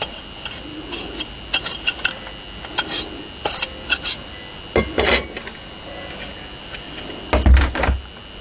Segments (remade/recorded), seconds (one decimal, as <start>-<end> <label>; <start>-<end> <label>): 0.0-8.4 recorded